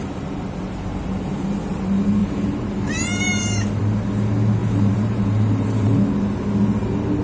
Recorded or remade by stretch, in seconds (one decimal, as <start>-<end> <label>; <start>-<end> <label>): 0.0-2.2 recorded; 2.2-3.8 remade; 3.8-4.6 recorded; 4.6-6.0 remade; 6.0-7.2 recorded